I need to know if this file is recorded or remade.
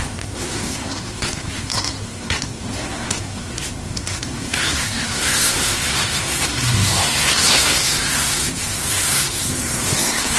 remade